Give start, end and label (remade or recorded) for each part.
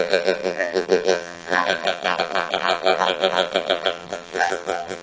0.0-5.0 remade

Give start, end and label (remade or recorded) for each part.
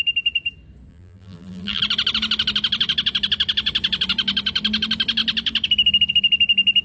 0.0-0.9 recorded; 0.9-1.8 remade; 1.8-6.8 recorded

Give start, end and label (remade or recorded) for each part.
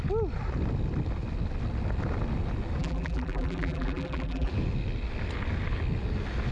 0.0-2.8 recorded; 2.8-4.5 remade; 4.5-6.5 recorded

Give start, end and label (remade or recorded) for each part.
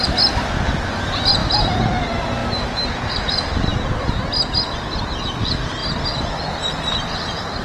0.0-5.8 recorded; 5.8-6.7 remade; 6.7-7.6 recorded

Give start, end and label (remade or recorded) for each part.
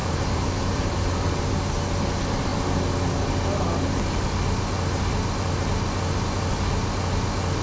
0.0-1.5 remade; 1.5-7.6 recorded